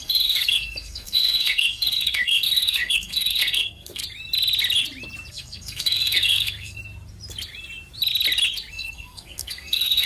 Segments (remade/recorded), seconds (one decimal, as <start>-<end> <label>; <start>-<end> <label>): 0.0-4.0 remade; 4.0-5.3 recorded; 5.3-6.8 remade; 6.8-8.7 recorded; 8.7-10.1 remade